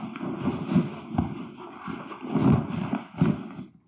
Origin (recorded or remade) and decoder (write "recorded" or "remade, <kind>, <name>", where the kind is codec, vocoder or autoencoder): recorded